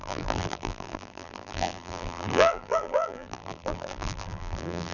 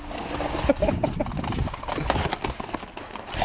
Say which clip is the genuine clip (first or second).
second